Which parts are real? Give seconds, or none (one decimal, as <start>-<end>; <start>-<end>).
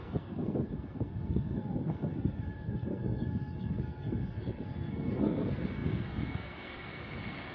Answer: none